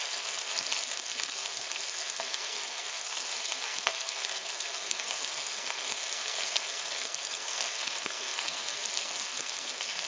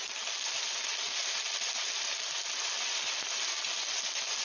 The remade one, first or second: first